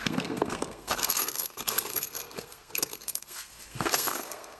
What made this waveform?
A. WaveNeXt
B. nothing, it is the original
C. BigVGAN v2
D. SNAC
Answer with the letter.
D